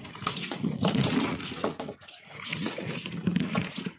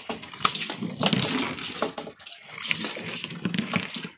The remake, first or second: first